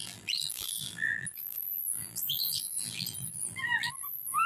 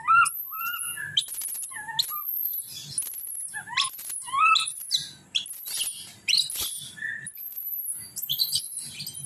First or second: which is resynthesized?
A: first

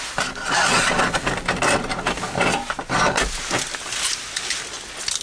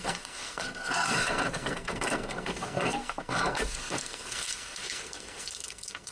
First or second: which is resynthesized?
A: second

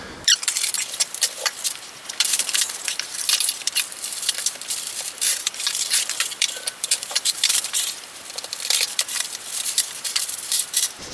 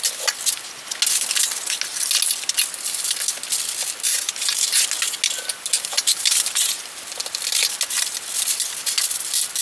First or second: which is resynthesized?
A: first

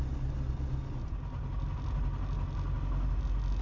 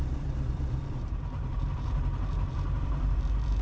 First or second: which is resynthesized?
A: second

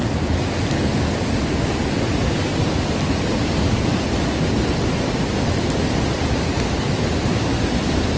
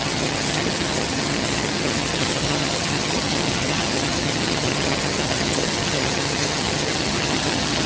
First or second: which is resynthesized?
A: second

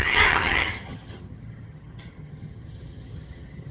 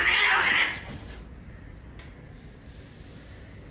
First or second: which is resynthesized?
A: first